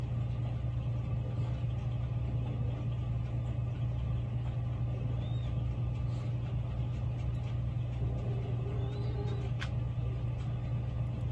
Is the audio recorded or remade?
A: recorded